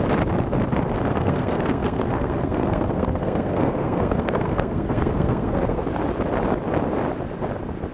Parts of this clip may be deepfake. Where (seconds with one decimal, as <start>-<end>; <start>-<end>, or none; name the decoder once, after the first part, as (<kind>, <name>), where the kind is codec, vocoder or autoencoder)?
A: 1.1-5.8 (codec, SNAC)